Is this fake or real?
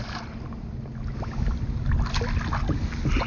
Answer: real